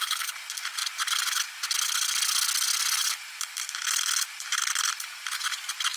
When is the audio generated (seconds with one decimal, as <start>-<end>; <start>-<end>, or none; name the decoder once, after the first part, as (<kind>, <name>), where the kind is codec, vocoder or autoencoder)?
3.0-4.7 (vocoder, BigVGAN v2)